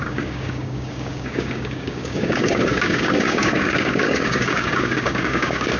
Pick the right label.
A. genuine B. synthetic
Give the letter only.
B